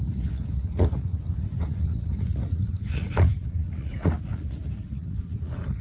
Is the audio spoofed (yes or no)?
yes